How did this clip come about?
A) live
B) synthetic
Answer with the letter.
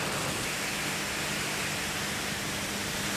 A